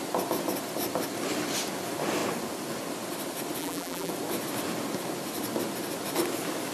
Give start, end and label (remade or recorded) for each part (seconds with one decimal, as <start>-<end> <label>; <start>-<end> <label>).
0.0-3.6 recorded; 3.6-4.1 remade; 4.1-6.7 recorded